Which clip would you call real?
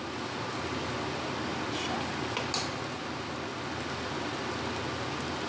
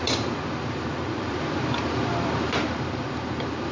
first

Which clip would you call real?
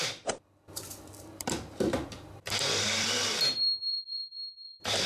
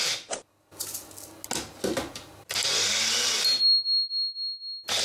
second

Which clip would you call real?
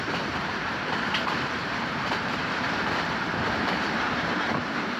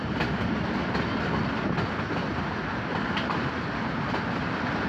second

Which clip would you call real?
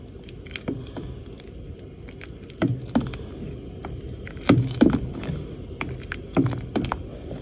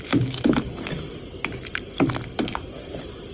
first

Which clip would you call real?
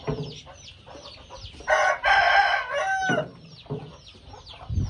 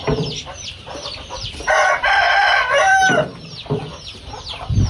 first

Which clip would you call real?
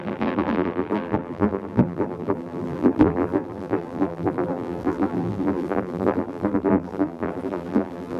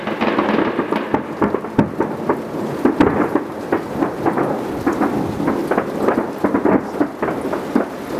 second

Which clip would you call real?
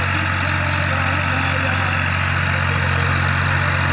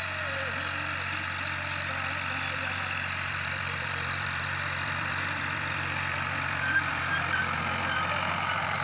first